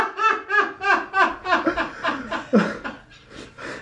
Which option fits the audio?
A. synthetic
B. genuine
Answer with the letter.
B